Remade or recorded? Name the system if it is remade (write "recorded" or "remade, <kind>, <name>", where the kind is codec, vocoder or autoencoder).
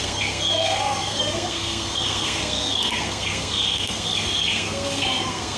remade, codec, SNAC